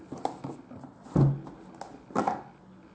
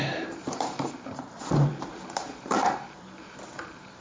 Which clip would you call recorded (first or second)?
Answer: first